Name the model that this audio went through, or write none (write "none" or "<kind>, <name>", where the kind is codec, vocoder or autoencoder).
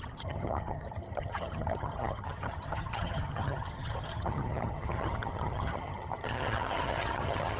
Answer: vocoder, HiFi-GAN